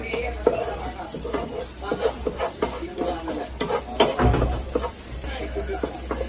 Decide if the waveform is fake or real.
real